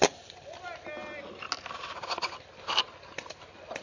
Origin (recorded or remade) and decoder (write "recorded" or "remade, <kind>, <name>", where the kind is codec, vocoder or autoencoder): recorded